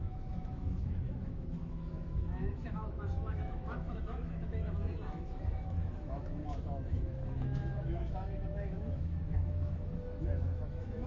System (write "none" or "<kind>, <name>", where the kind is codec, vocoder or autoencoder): autoencoder, DAC-VAE